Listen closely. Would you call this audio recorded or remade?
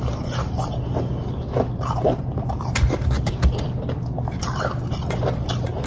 recorded